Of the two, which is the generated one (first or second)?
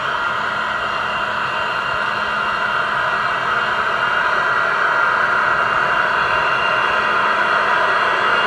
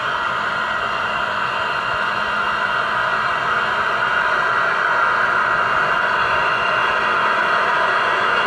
second